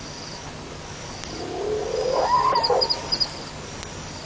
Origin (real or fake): real